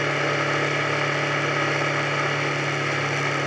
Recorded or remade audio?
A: recorded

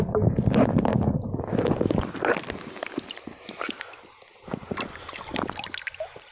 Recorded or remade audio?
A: recorded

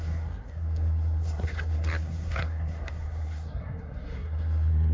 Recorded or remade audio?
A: remade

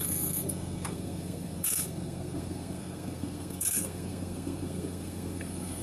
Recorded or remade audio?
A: remade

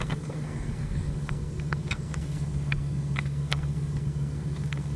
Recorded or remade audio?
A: remade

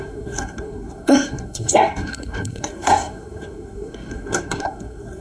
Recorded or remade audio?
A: remade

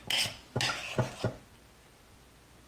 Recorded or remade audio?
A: recorded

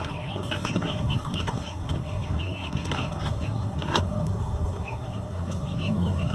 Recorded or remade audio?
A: remade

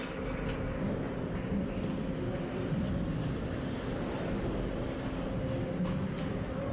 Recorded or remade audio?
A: recorded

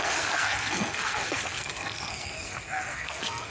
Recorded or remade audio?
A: remade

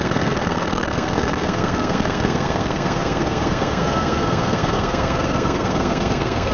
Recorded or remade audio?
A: remade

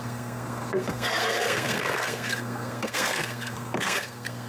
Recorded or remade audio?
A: remade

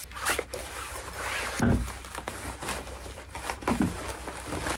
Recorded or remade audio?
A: recorded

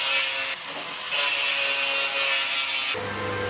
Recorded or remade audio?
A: recorded